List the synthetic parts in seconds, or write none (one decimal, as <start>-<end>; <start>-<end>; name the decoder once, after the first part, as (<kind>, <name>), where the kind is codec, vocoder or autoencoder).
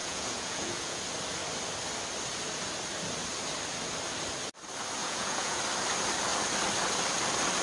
0.0-1.0 (vocoder, Vocos); 5.0-5.6